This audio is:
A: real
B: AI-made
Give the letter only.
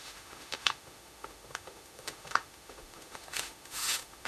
B